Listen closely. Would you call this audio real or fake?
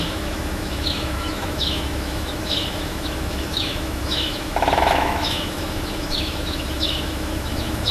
fake